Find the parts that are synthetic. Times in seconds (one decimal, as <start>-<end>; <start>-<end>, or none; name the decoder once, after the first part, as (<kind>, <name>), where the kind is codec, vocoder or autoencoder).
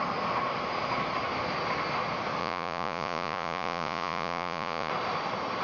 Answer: 2.4-4.9 (vocoder, Vocos)